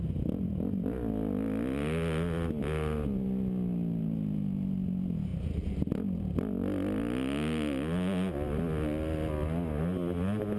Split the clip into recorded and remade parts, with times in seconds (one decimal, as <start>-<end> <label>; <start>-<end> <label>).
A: 0.0-10.6 recorded